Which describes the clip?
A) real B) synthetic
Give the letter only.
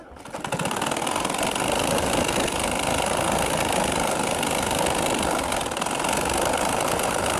A